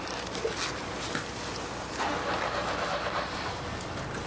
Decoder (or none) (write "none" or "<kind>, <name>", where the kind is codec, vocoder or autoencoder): none